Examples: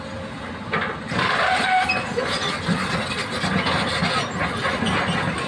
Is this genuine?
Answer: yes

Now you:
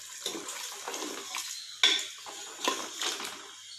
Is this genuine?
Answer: yes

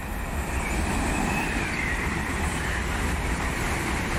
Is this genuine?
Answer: no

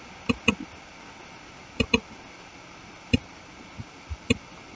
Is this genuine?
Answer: yes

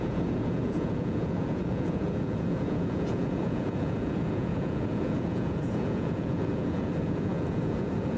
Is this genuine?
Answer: no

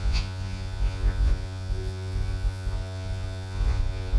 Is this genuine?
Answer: no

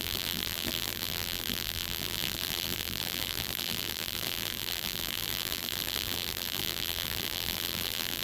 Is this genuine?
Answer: no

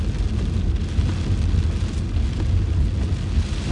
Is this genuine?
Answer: yes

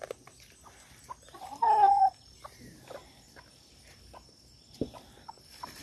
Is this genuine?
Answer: yes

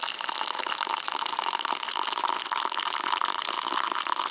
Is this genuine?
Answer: yes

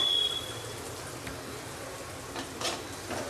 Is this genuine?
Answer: yes